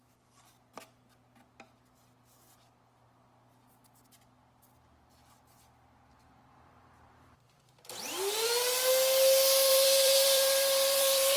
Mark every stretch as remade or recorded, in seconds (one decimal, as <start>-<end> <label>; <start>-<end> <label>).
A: 0.0-6.1 recorded; 6.1-8.6 remade; 8.6-9.7 recorded; 9.7-11.4 remade